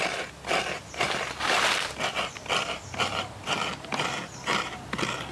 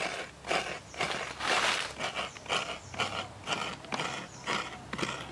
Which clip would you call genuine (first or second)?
second